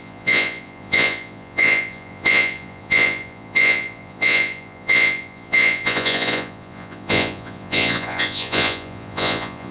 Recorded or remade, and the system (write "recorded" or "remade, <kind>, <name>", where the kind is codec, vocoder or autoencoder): remade, vocoder, Vocos